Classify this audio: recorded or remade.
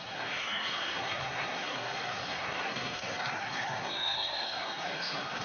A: remade